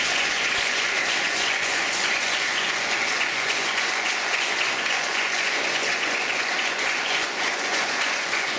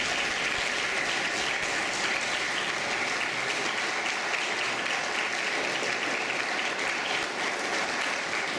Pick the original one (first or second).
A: second